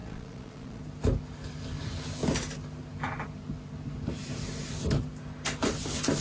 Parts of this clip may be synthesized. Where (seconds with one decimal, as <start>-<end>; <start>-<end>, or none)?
0.0-0.8

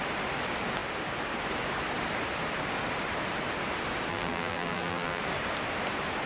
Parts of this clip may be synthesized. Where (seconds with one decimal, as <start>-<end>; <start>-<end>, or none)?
4.1-5.2

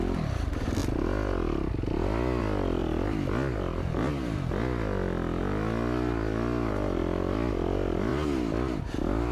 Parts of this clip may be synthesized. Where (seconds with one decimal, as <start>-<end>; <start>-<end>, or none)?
none

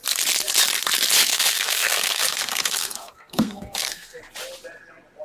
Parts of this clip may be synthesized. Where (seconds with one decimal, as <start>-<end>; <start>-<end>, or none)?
1.3-4.2

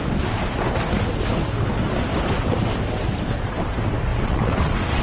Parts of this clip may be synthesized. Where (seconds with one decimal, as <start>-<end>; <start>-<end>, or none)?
4.1-5.0

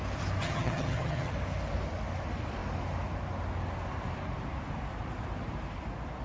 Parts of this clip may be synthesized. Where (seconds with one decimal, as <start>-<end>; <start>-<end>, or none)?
0.4-1.3

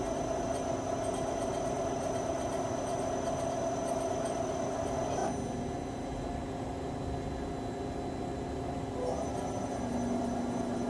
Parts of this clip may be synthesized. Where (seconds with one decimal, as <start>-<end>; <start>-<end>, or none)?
none